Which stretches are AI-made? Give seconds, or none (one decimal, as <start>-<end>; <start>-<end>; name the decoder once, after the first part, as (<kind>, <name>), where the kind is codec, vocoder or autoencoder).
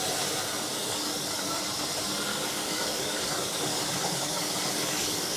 0.7-1.6 (codec, DAC); 2.3-5.4